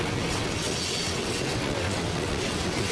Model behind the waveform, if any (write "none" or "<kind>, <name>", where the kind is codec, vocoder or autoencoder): vocoder, WaveNeXt